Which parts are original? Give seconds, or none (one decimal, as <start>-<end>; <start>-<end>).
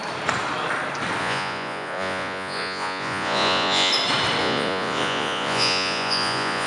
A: 0.0-1.2; 3.9-4.4